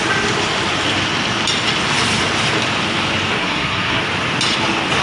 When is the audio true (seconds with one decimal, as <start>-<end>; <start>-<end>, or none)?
0.0-3.4; 4.0-5.0